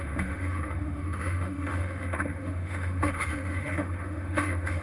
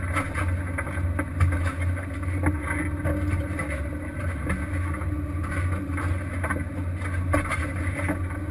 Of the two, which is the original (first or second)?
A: second